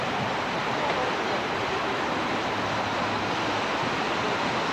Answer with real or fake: real